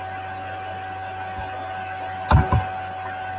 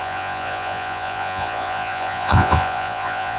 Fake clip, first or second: second